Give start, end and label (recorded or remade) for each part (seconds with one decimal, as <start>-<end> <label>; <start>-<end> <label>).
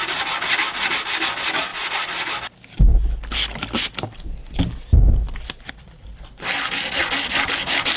0.0-8.0 recorded